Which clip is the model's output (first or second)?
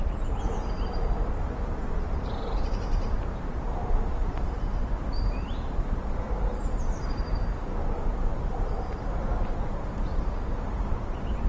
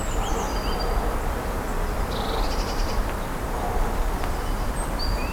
first